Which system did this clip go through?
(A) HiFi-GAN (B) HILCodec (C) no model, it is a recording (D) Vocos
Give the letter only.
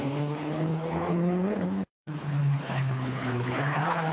B